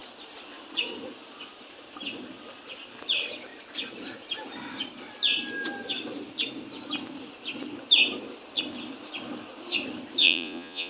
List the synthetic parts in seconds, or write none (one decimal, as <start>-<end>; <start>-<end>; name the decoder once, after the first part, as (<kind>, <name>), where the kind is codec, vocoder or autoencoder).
10.2-10.9 (vocoder, Vocos)